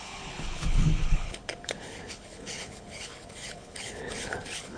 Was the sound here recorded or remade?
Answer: remade